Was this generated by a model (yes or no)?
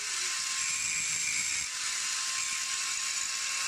no